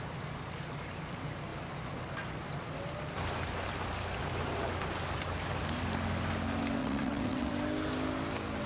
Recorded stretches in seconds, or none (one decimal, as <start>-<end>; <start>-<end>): 0.0-6.8; 7.5-8.7